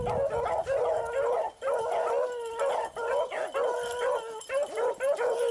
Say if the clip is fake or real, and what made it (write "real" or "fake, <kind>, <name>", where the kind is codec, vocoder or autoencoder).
real